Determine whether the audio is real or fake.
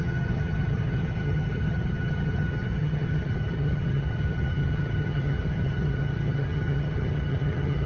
fake